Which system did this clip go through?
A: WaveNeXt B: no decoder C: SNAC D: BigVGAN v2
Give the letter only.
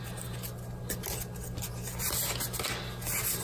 B